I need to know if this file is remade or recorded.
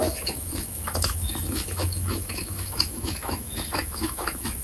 remade